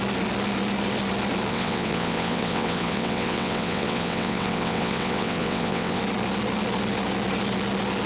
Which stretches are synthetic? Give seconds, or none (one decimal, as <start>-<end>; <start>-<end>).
1.5-6.0